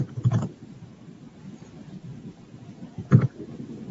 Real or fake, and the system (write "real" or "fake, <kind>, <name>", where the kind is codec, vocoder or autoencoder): real